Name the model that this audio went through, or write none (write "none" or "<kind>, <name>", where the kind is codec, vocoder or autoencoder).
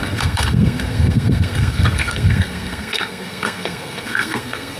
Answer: codec, SNAC